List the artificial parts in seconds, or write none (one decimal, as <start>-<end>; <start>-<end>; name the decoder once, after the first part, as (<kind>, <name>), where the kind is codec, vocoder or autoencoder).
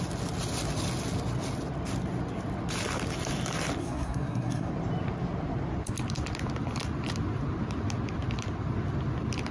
3.8-4.7 (codec, SNAC)